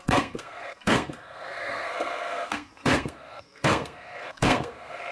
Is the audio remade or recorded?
remade